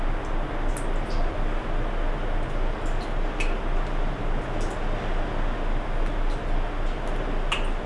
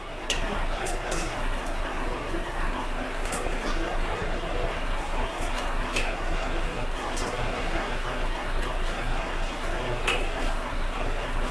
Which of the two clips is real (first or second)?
first